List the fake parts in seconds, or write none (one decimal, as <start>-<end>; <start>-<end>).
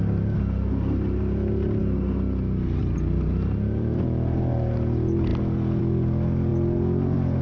none